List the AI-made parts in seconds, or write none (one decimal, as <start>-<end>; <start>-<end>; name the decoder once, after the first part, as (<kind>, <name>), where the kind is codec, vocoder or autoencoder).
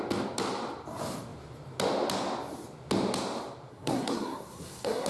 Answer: 3.7-5.1 (codec, SNAC)